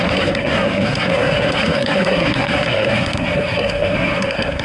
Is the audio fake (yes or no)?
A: yes